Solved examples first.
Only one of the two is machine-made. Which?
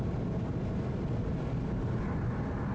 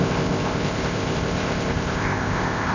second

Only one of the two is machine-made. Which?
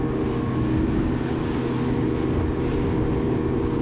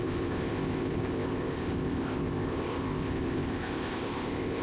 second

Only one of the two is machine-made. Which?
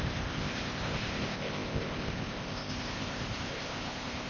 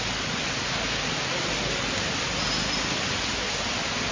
first